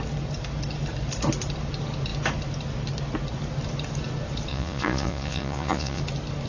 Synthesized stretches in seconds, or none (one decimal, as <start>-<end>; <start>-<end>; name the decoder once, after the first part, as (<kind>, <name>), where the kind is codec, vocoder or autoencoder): 4.5-6.0 (vocoder, Vocos)